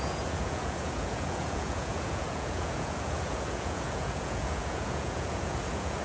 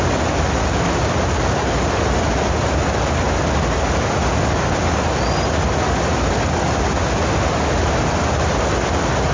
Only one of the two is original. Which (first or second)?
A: second